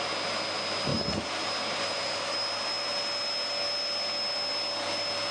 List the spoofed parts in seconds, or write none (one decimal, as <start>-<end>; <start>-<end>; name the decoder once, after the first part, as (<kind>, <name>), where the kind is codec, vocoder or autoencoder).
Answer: none